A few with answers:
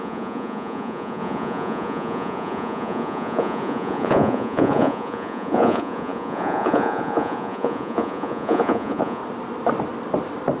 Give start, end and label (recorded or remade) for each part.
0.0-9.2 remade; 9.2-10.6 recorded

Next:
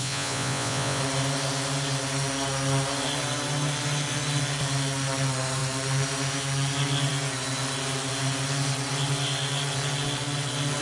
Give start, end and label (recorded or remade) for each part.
0.0-1.0 remade; 1.0-10.8 recorded

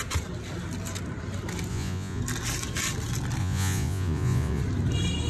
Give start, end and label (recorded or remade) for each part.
0.0-1.7 recorded; 1.7-2.2 remade; 2.2-3.4 recorded; 3.4-4.6 remade; 4.6-5.3 recorded

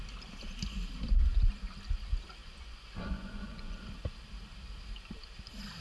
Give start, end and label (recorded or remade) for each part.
0.0-2.4 recorded; 2.4-3.8 remade; 3.8-5.8 recorded

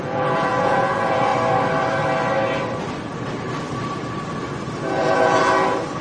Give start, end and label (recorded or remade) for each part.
0.0-1.3 remade; 1.3-4.9 recorded; 4.9-5.4 remade; 5.4-6.0 recorded

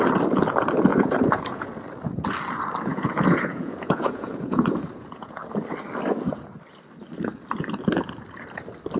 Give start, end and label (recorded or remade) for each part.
0.0-0.9 recorded; 0.9-1.7 remade; 1.7-2.9 recorded; 2.9-5.4 remade; 5.4-9.0 recorded

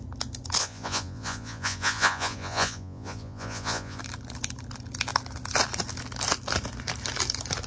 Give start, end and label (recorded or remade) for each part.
0.0-0.6 recorded; 0.6-4.0 remade; 4.0-7.7 recorded

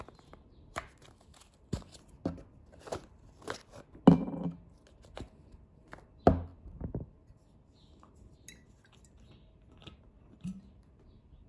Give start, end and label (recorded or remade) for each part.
0.0-11.5 recorded